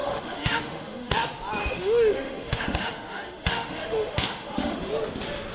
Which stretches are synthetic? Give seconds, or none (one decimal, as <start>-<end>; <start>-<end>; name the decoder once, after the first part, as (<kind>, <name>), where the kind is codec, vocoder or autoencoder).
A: 0.0-1.1 (autoencoder, DAC-VAE); 1.6-4.9